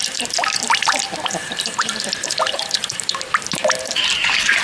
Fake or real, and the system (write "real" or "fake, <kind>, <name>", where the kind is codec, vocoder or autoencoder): fake, vocoder, BigVGAN v2